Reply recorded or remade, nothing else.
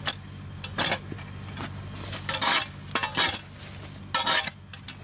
recorded